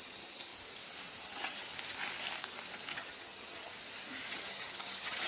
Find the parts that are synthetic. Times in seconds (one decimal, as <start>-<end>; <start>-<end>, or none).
0.0-0.5; 1.2-1.7; 2.9-3.7; 4.3-5.3